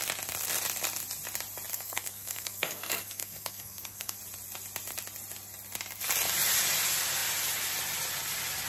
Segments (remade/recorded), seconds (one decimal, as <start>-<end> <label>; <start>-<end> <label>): 0.0-1.7 recorded; 1.7-4.2 remade; 4.2-8.7 recorded